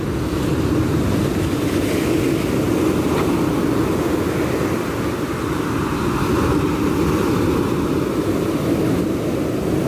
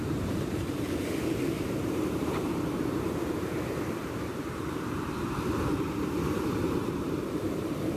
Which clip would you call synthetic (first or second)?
second